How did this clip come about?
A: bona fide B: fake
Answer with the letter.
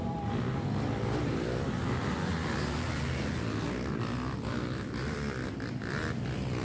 B